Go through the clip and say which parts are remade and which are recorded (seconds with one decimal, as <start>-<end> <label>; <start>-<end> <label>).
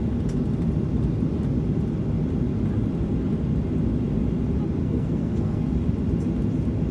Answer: 0.0-4.8 recorded; 4.8-5.7 remade; 5.7-6.9 recorded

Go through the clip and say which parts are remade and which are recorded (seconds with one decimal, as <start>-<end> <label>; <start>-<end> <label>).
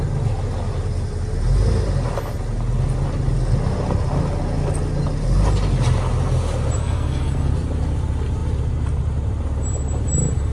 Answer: 0.0-6.8 recorded; 6.8-7.5 remade; 7.5-10.5 recorded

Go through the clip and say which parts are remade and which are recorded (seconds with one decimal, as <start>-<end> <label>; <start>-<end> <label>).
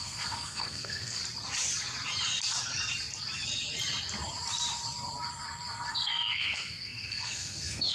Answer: 0.0-1.2 remade; 1.2-5.9 recorded; 5.9-7.9 remade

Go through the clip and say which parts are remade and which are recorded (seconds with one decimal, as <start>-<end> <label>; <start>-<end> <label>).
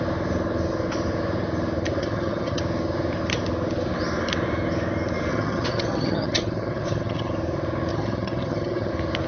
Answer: 0.0-2.0 recorded; 2.0-2.6 remade; 2.6-5.3 recorded; 5.3-7.3 remade; 7.3-7.9 recorded; 7.9-8.9 remade; 8.9-9.3 recorded